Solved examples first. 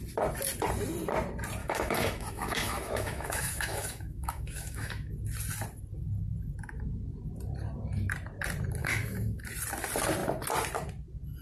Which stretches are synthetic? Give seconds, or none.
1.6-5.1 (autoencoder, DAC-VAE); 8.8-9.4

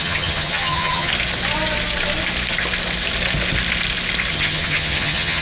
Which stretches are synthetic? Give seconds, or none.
0.0-1.1 (vocoder, HiFi-GAN); 4.3-5.4

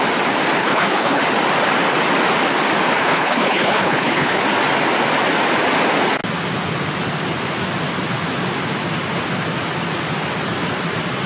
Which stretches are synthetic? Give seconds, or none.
0.6-1.2 (codec, HILCodec); 3.0-4.4

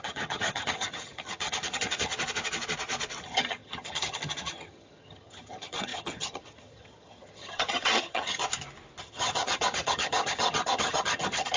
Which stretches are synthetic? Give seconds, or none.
0.0-2.1 (vocoder, HiFi-GAN); 3.2-8.4; 9.0-11.6

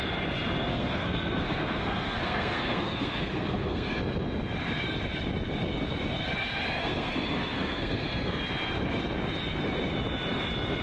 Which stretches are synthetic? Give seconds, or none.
0.7-4.0 (codec, SNAC); 6.8-8.4

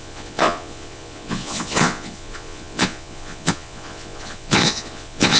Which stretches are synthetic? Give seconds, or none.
0.0-5.4 (vocoder, Vocos)

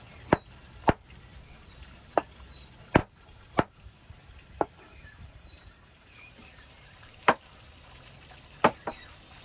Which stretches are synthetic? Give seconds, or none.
3.0-7.9 (vocoder, BigVGAN v2)